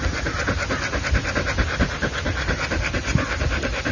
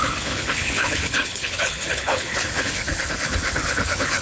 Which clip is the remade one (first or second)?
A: second